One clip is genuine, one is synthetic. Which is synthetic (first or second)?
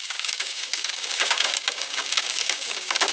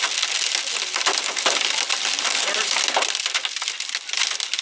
first